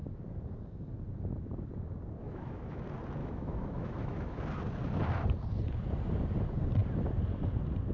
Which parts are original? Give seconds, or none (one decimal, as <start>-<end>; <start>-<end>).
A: 0.0-2.2; 2.8-3.2; 4.4-7.9